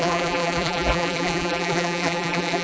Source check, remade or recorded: remade